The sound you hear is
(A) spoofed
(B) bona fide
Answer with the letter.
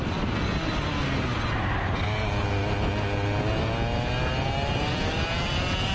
B